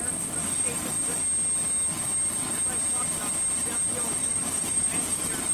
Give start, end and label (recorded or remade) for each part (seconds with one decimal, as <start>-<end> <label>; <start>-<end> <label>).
0.0-0.9 remade; 0.9-4.2 recorded; 4.2-5.5 remade